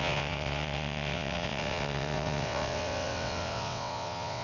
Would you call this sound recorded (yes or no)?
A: no